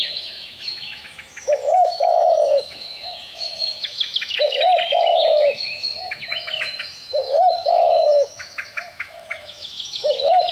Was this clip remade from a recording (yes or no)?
yes